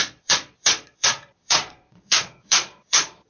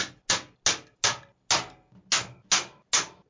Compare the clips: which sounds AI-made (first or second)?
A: first